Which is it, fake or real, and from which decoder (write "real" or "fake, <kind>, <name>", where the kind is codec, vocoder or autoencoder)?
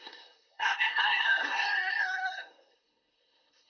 fake, codec, SNAC